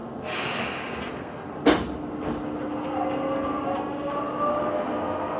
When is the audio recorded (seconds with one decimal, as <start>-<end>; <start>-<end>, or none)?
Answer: 0.0-1.1; 1.5-4.7